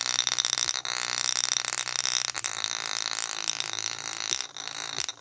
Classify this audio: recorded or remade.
recorded